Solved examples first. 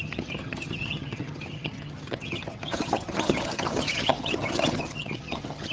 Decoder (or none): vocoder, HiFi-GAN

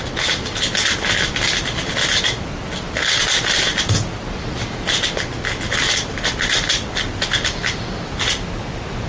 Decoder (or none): none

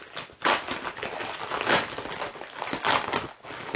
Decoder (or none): none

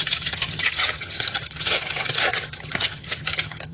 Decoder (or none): vocoder, HiFi-GAN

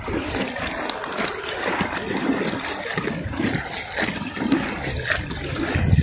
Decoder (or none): none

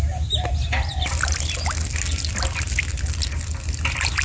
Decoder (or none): none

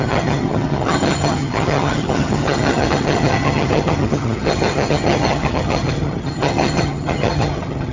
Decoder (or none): vocoder, HiFi-GAN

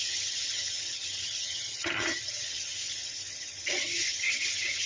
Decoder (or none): vocoder, HiFi-GAN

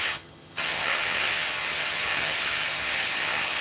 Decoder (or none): vocoder, HiFi-GAN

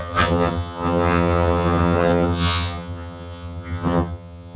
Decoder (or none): vocoder, HiFi-GAN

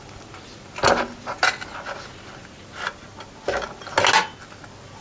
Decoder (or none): none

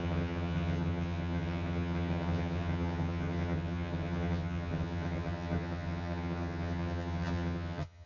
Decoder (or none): vocoder, HiFi-GAN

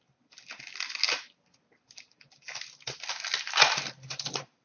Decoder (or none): none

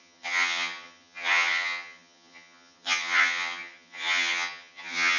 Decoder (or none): vocoder, HiFi-GAN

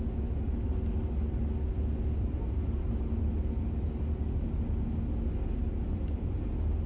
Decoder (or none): none